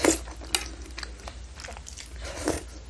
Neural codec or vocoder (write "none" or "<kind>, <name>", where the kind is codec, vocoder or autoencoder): none